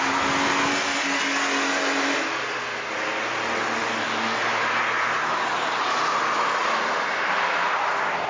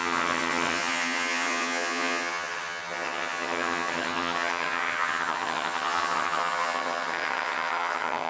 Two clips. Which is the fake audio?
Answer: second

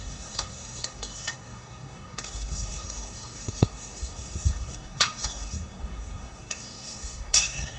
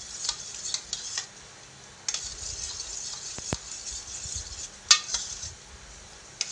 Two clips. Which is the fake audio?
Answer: first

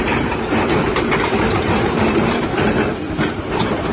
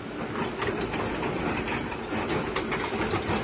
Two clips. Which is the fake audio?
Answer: first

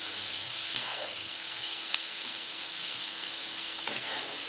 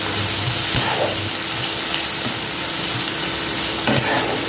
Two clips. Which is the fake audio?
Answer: first